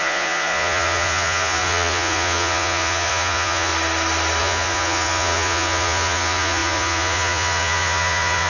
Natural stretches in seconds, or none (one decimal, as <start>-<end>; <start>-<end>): 3.7-4.4